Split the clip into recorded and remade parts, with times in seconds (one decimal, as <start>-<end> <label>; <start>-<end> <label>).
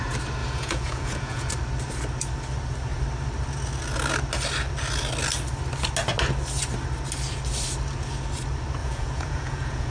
0.0-0.4 recorded; 0.4-1.5 remade; 1.5-8.8 recorded; 8.8-9.9 remade